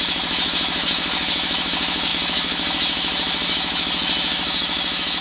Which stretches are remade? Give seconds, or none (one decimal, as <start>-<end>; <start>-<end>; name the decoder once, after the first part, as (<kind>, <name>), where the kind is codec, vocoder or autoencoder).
0.0-5.2 (autoencoder, DAC-VAE)